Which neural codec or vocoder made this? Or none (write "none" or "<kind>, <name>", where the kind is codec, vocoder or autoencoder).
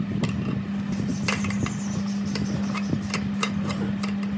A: none